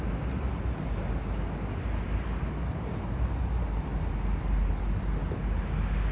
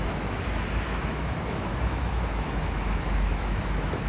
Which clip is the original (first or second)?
first